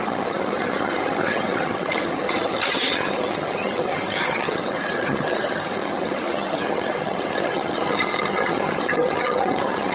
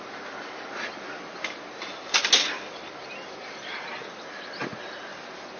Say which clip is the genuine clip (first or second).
second